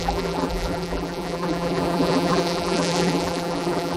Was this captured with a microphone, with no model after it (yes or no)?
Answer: no